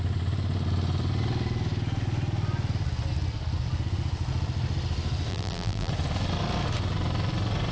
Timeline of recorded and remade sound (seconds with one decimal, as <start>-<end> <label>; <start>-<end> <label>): 0.0-5.3 recorded; 5.3-5.9 remade; 5.9-7.7 recorded